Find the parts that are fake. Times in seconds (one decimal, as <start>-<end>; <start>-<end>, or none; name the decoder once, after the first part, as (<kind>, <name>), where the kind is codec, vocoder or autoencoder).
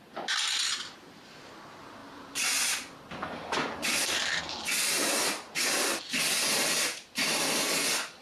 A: none